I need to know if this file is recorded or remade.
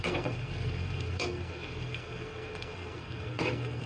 remade